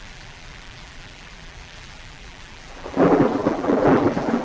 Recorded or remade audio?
remade